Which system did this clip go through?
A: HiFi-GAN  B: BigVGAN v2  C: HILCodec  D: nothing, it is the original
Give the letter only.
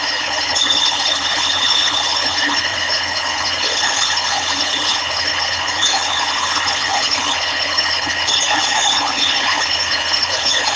C